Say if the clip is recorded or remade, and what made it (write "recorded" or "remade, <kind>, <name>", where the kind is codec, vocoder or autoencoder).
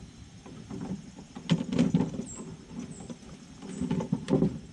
recorded